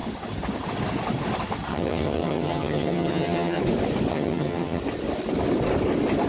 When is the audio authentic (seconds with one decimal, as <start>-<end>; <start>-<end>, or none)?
0.0-1.7; 3.6-4.1; 4.8-6.3